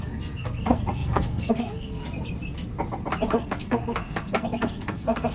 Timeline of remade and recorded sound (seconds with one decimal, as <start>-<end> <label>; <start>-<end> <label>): 0.0-2.0 remade; 2.0-3.3 recorded; 3.3-5.3 remade